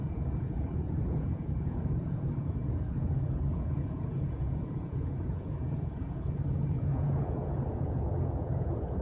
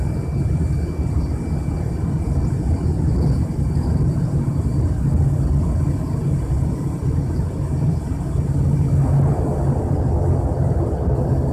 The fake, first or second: first